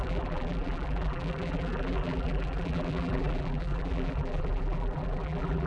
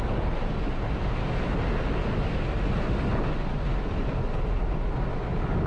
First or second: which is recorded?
second